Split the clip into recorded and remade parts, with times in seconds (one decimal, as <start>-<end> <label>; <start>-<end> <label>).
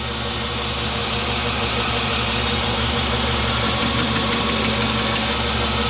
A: 0.0-1.0 recorded; 1.0-4.5 remade; 4.5-5.9 recorded